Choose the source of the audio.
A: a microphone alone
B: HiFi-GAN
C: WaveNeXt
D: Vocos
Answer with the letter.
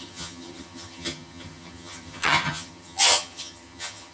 B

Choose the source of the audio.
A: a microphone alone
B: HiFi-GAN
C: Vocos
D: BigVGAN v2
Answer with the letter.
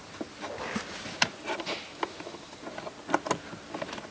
A